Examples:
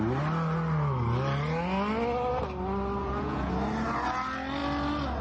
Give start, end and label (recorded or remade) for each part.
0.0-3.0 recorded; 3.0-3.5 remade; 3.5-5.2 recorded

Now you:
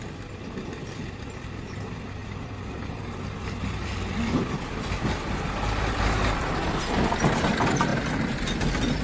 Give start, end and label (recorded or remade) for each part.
0.0-2.2 recorded; 2.2-3.1 remade; 3.1-9.0 recorded

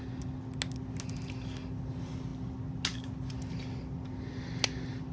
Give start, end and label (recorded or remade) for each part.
0.0-5.1 recorded

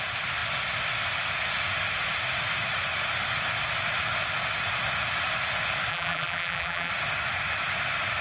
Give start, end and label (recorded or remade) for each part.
0.0-5.9 recorded; 5.9-6.9 remade; 6.9-8.2 recorded

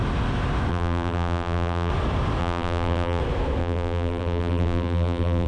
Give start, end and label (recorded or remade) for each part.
0.0-0.7 recorded; 0.7-1.9 remade; 1.9-2.4 recorded; 2.4-3.2 remade; 3.2-3.6 recorded; 3.6-5.5 remade

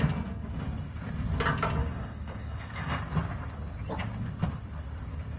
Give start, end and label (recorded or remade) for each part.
0.0-1.8 recorded; 1.8-3.0 remade; 3.0-5.4 recorded

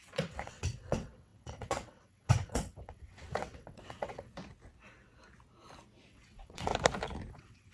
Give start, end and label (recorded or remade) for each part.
0.0-4.3 remade; 4.3-6.1 recorded; 6.1-6.7 remade; 6.7-7.3 recorded; 7.3-7.7 remade

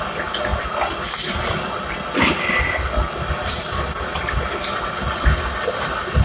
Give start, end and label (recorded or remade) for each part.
0.0-6.2 recorded